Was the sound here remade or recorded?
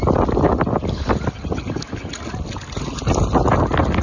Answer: recorded